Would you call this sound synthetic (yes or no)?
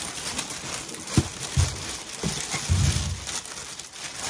no